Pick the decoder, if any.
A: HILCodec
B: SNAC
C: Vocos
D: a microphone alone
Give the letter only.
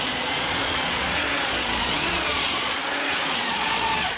C